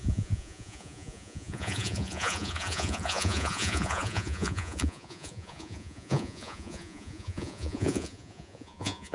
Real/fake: fake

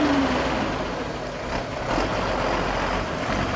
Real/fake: real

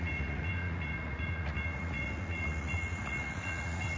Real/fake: fake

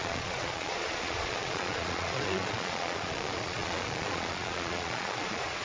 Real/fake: fake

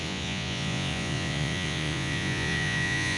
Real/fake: fake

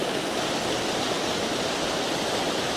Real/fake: real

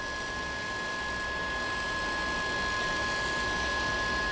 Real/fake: real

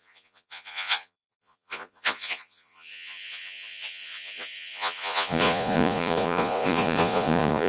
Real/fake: fake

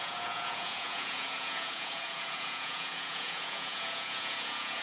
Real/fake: fake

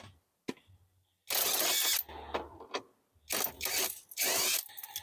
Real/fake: real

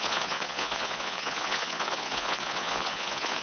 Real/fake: fake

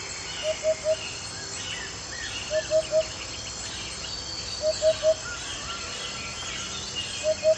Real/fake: real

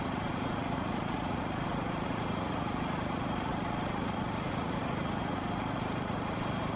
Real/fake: fake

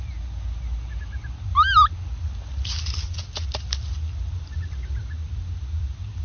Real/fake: real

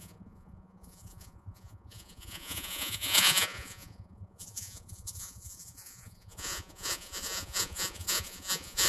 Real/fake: fake